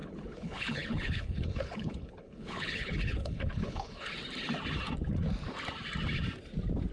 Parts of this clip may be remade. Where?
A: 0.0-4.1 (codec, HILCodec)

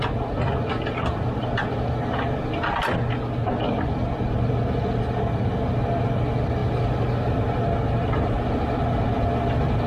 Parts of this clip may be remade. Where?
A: none

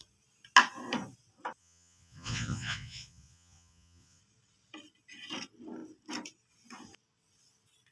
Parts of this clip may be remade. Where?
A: 1.6-4.2 (vocoder, Vocos)